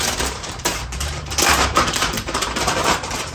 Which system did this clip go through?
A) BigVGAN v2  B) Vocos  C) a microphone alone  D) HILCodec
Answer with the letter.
A